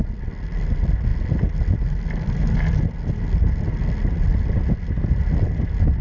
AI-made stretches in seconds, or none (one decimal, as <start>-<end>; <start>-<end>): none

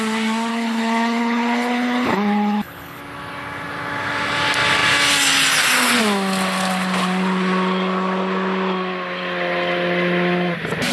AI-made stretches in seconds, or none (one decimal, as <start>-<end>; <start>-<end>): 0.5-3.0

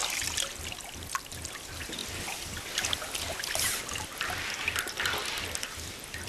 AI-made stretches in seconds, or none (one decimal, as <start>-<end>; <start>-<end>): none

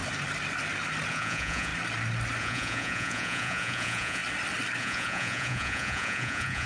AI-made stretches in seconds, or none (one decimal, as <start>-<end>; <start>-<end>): 1.1-1.7; 2.4-4.2; 4.8-6.7

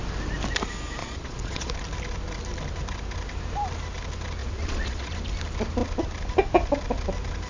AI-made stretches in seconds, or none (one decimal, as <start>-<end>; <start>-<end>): 1.0-1.7; 4.4-5.1

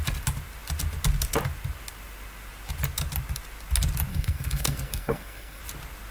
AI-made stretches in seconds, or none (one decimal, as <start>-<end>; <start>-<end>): 4.1-5.6

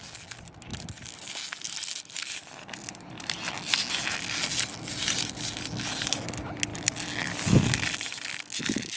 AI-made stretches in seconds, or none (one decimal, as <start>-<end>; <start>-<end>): none